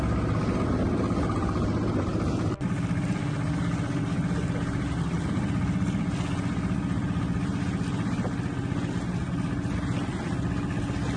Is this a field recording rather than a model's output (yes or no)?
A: yes